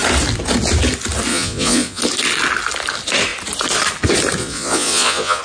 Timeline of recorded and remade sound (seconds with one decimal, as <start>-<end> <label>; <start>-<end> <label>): 0.0-1.3 recorded; 1.3-2.0 remade; 2.0-4.4 recorded; 4.4-5.4 remade